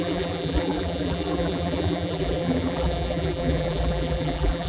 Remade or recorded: remade